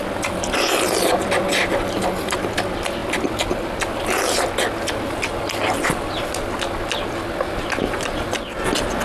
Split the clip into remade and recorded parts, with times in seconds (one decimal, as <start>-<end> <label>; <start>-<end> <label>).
0.0-9.0 recorded